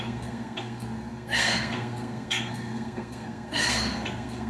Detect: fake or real fake